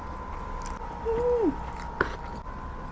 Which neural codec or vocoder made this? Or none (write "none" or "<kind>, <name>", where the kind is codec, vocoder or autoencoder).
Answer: none